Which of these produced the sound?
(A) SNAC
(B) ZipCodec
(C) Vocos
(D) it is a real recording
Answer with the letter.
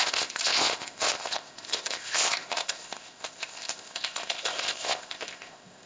B